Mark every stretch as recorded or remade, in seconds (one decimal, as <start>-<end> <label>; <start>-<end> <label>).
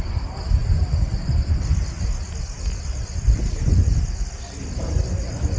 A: 0.0-5.6 recorded